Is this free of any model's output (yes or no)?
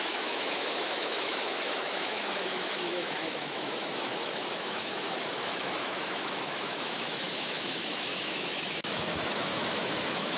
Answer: no